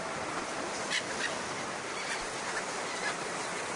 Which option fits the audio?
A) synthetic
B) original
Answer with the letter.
B